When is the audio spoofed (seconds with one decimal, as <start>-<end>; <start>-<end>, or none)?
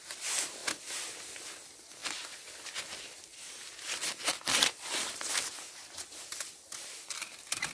none